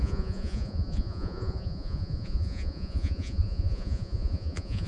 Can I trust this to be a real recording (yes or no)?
no